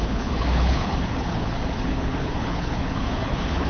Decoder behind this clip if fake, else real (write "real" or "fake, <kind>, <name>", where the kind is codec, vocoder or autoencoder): fake, codec, HILCodec